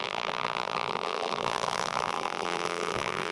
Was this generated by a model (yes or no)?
yes